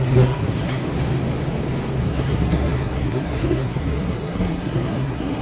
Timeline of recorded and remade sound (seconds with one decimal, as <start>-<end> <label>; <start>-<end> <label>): 0.0-0.8 remade; 0.8-2.0 recorded; 2.0-5.4 remade